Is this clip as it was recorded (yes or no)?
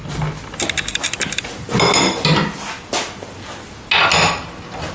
yes